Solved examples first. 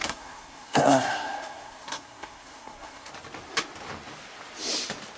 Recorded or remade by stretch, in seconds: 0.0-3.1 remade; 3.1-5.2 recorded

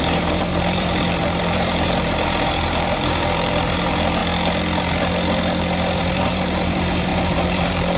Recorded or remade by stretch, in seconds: 0.0-4.2 remade; 4.2-6.0 recorded; 6.0-8.0 remade

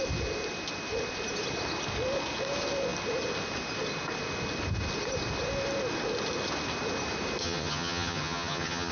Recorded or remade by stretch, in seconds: 0.0-7.4 recorded; 7.4-8.9 remade